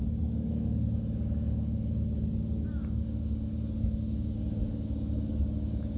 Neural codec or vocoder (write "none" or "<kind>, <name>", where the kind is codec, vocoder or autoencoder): codec, DAC